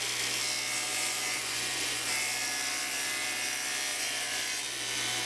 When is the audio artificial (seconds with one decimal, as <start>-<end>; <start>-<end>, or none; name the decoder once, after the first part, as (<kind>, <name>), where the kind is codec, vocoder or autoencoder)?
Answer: 0.9-2.1 (vocoder, Vocos); 3.9-4.6